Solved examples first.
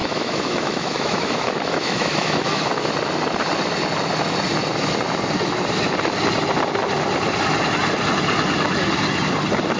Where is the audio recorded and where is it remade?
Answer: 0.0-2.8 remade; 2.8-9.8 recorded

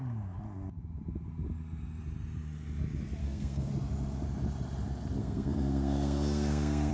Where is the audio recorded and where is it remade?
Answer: 0.0-3.2 recorded; 3.2-3.7 remade; 3.7-5.2 recorded; 5.2-6.9 remade

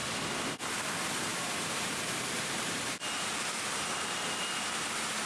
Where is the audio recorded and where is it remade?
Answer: 0.0-0.7 recorded; 0.7-5.3 remade